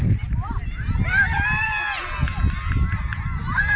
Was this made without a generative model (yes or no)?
yes